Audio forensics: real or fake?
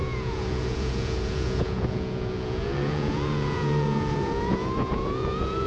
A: fake